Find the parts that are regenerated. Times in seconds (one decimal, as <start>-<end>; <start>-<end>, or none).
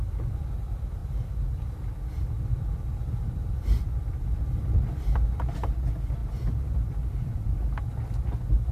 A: none